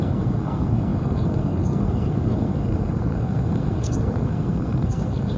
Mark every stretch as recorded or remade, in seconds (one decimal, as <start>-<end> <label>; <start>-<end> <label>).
0.0-5.4 remade